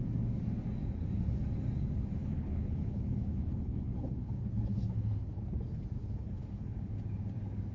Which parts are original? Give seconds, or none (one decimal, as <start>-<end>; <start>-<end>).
0.0-2.2; 5.3-6.0; 6.9-7.7